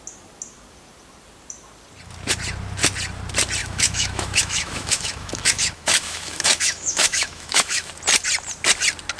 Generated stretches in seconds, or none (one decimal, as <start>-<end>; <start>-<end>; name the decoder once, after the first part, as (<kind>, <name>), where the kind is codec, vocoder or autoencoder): 3.6-7.9 (autoencoder, DAC-VAE)